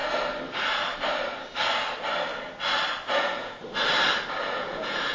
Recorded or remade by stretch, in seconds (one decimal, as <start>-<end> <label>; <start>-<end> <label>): 0.0-3.1 recorded; 3.1-3.6 remade; 3.6-4.4 recorded; 4.4-5.1 remade